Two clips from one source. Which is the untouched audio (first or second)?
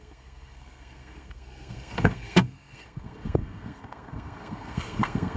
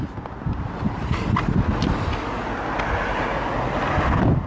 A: second